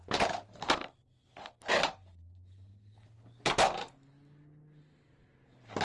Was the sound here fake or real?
real